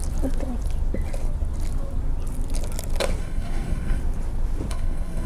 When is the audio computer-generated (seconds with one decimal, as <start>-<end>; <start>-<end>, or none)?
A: 3.2-4.0; 4.7-5.3